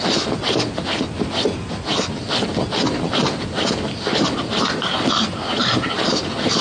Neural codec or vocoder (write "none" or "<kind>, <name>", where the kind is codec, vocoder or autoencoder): none